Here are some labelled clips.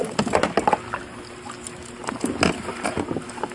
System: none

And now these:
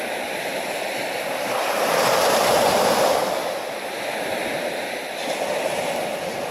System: none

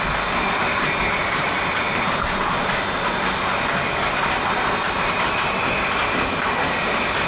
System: none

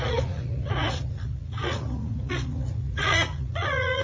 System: vocoder, Vocos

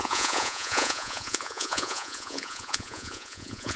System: vocoder, Vocos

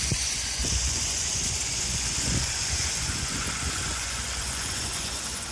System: vocoder, Vocos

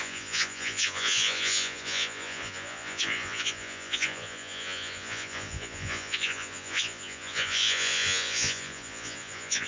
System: vocoder, Vocos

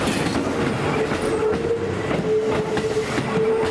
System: none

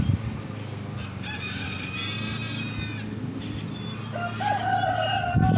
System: none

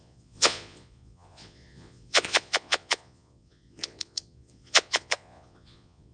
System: vocoder, Vocos